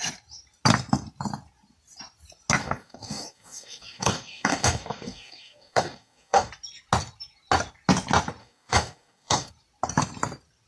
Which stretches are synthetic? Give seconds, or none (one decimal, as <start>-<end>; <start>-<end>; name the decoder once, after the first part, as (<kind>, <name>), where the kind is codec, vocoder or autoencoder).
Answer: 2.6-6.5 (codec, DAC); 8.4-9.5